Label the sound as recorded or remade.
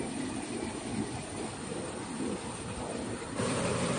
recorded